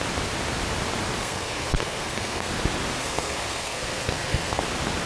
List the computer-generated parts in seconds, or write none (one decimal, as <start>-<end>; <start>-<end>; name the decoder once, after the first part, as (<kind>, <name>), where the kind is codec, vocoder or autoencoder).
1.2-2.5 (codec, SNAC); 3.0-4.6